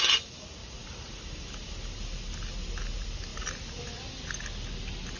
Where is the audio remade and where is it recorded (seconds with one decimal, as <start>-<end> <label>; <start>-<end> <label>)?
0.0-0.6 recorded; 0.6-1.2 remade; 1.2-5.2 recorded